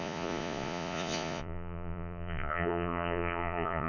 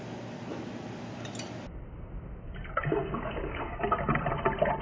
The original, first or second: second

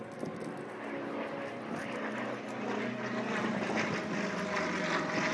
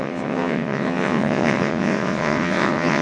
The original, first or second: first